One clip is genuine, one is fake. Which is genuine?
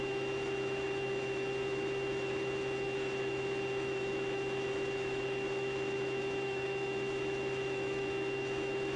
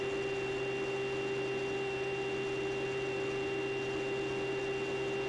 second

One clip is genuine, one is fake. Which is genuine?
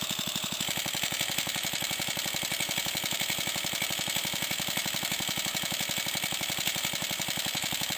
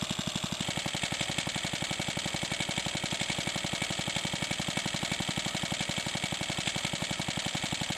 second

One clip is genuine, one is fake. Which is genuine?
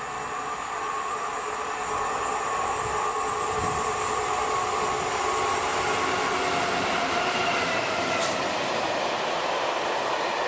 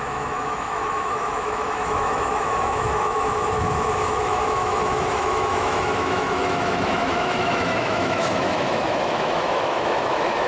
first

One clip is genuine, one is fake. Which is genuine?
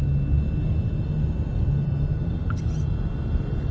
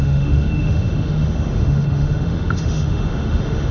first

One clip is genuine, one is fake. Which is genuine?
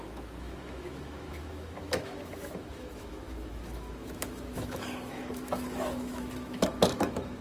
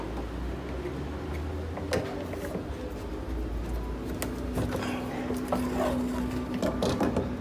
second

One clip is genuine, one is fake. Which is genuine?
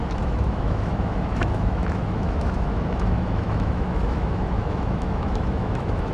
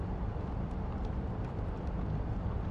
second